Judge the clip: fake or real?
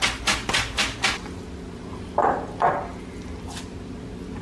real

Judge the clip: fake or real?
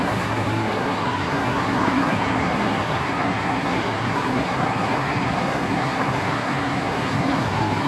fake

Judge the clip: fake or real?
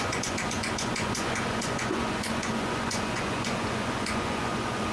fake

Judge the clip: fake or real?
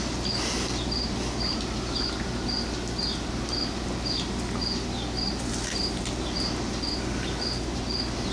real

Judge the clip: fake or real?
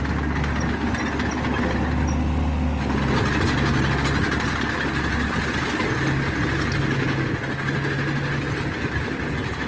real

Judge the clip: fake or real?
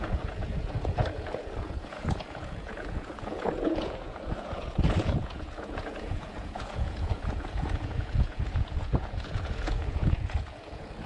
fake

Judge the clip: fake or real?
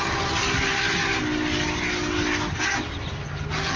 real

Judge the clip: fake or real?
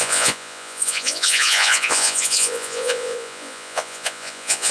fake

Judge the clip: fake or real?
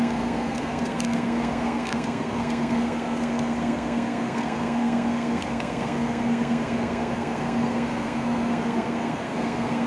fake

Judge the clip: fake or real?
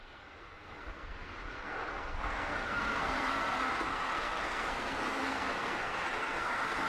fake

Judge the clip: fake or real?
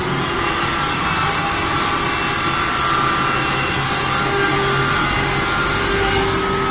real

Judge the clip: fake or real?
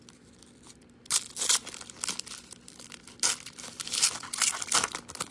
real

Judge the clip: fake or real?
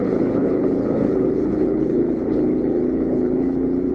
fake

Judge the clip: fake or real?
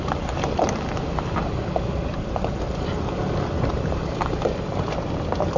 fake